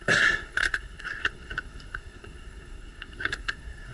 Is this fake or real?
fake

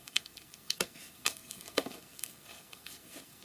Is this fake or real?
fake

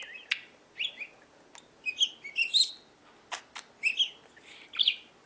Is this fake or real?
real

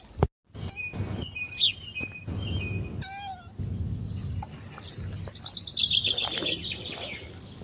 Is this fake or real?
real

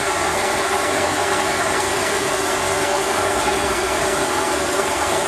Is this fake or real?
fake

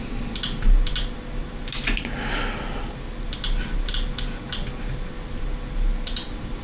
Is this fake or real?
real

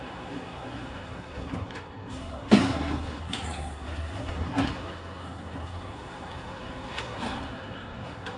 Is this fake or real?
fake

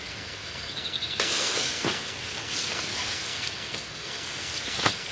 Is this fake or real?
fake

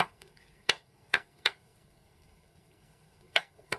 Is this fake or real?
fake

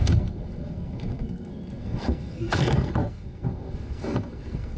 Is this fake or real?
fake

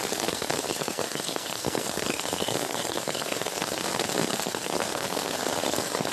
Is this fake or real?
fake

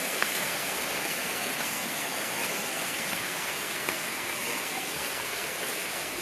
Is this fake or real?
fake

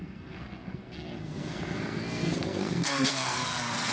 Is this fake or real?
fake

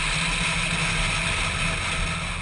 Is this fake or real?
real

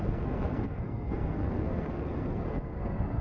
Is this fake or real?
fake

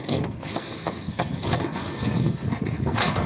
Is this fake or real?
fake